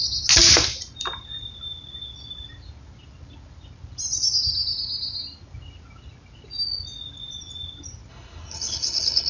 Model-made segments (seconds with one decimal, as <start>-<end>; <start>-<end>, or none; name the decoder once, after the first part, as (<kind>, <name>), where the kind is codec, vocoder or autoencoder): 8.1-9.3 (codec, HILCodec)